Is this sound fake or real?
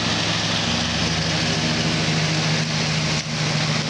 real